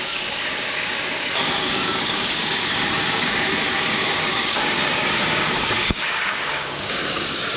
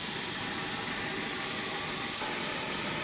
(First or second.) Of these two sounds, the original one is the second